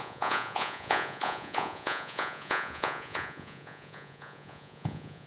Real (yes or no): no